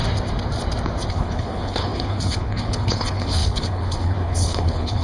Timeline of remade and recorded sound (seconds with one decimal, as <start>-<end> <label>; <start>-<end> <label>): 0.0-1.1 recorded; 1.1-5.0 remade